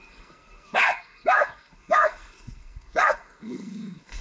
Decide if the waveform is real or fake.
fake